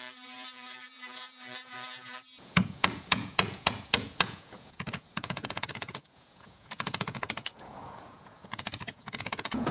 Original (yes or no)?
no